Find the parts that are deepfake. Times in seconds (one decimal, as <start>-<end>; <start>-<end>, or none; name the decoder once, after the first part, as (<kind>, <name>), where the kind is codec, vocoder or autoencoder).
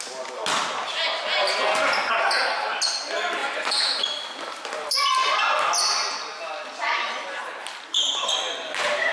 3.4-4.0 (vocoder, Vocos)